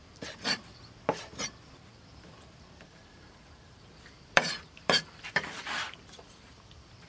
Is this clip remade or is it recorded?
remade